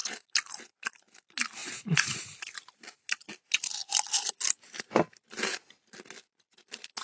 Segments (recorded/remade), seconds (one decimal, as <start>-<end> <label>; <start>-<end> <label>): 0.0-1.6 recorded; 1.6-2.2 remade; 2.2-7.0 recorded